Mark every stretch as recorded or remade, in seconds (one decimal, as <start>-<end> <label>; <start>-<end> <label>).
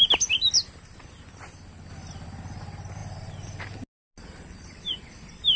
0.0-5.6 recorded